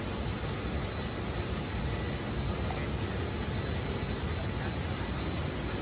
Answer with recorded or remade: recorded